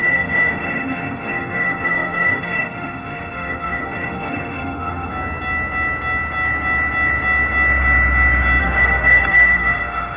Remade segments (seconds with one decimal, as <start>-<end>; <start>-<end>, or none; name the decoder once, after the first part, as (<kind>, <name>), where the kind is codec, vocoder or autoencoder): 0.0-5.1 (autoencoder, DAC-VAE); 8.6-10.2